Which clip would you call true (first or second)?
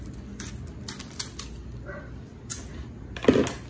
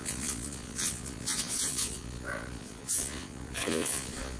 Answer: first